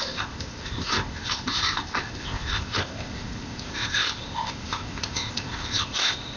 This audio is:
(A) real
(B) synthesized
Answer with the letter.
B